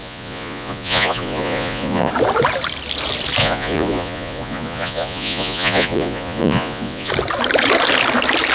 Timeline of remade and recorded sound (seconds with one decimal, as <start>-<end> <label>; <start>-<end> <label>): 0.0-2.1 remade; 2.1-3.4 recorded; 3.4-7.1 remade; 7.1-8.5 recorded

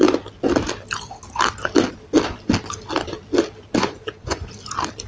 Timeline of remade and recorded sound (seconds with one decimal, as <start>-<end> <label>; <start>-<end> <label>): 0.0-3.8 recorded; 3.8-4.5 remade; 4.5-5.1 recorded